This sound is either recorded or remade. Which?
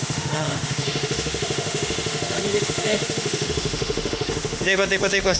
remade